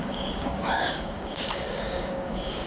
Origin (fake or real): fake